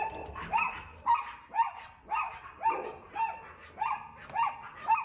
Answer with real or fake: real